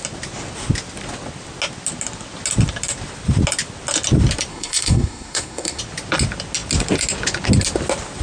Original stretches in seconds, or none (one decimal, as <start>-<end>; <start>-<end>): 0.0-4.5; 5.8-8.2